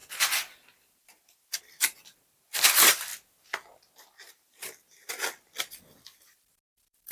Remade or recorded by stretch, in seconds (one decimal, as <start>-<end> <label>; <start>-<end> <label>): 0.0-1.6 recorded; 1.6-3.1 remade; 3.1-5.6 recorded; 5.6-7.1 remade